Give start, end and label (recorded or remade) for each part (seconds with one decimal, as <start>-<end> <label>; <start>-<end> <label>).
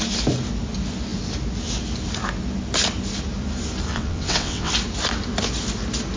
0.0-3.9 recorded; 3.9-4.7 remade; 4.7-6.2 recorded